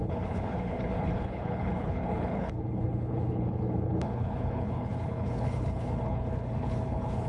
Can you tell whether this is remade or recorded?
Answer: remade